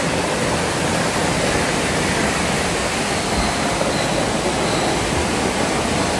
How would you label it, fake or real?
real